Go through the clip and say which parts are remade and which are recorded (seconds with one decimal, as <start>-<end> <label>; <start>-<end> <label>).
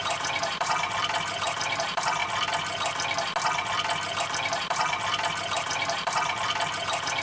0.0-2.2 remade; 2.2-4.2 recorded; 4.2-7.2 remade